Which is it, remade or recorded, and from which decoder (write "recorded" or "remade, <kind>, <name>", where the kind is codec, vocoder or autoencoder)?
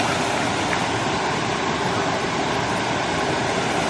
recorded